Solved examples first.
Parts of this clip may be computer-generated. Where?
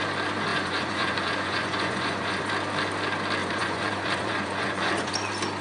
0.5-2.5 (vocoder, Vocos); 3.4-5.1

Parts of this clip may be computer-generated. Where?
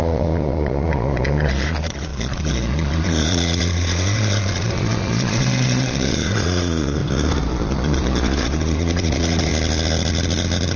0.0-7.0 (vocoder, Vocos); 7.5-9.5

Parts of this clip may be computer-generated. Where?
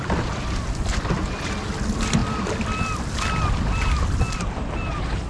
none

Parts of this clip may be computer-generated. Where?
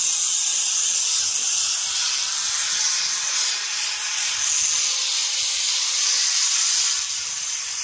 5.2-6.2 (vocoder, Vocos)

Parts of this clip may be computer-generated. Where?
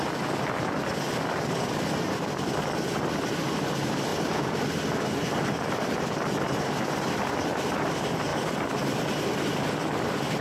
none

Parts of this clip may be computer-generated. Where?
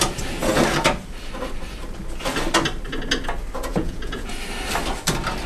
3.7-4.3 (vocoder, Vocos)